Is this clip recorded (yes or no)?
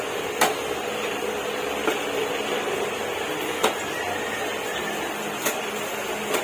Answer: no